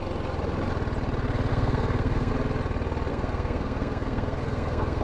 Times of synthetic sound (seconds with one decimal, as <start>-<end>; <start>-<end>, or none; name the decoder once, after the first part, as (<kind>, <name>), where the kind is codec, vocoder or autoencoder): 1.5-2.3 (codec, SNAC); 3.1-5.0